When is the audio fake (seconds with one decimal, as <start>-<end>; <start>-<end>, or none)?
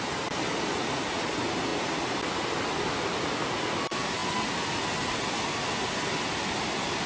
none